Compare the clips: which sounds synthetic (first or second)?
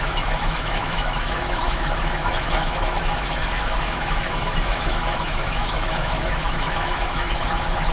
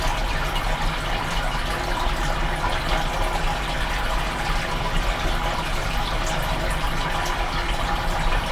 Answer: first